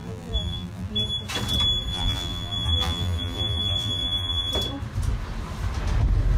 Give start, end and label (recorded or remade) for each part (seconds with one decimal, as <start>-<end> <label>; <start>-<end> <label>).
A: 0.0-0.9 remade; 0.9-1.9 recorded; 1.9-4.5 remade; 4.5-6.4 recorded